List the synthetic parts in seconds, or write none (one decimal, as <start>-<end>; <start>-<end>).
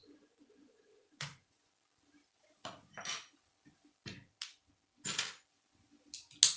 0.0-1.7